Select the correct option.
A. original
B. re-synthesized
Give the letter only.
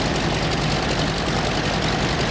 A